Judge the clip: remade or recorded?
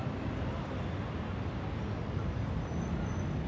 recorded